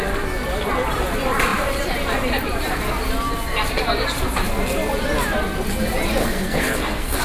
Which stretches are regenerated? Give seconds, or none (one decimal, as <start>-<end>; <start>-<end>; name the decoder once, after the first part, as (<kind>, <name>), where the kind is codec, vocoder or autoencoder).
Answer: 6.2-7.2 (codec, SNAC)

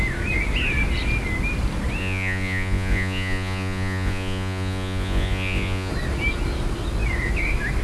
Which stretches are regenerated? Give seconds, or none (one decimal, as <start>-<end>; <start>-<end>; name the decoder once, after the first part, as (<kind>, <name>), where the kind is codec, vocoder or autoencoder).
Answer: 2.0-5.9 (vocoder, Vocos)

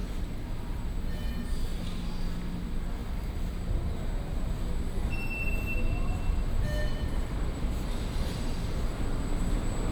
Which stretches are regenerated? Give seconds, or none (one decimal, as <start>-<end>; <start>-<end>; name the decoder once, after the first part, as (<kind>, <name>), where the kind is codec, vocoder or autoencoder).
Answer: 6.9-7.7 (vocoder, BigVGAN v2)

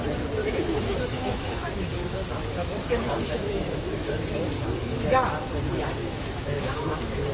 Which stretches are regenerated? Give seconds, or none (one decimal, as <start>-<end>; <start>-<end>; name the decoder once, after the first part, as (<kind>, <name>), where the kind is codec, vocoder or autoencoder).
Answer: 0.4-1.9 (autoencoder, DAC-VAE); 2.6-5.3; 6.0-7.3

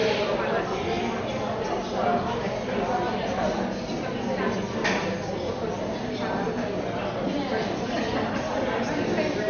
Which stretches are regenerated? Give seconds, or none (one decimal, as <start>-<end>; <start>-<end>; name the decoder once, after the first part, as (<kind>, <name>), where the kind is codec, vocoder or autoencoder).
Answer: none